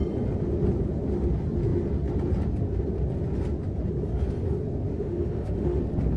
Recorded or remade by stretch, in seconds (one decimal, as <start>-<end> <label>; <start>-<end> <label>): 0.0-4.9 recorded; 4.9-5.8 remade; 5.8-6.2 recorded